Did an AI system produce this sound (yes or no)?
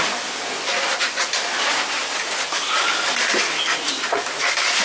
no